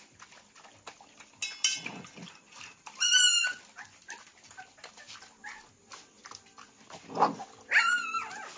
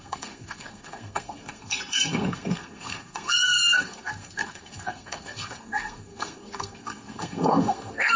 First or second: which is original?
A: first